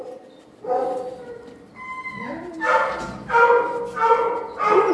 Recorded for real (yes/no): yes